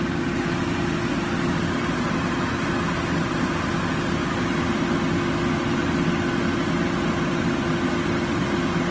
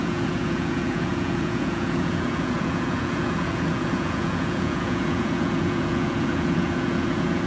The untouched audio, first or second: first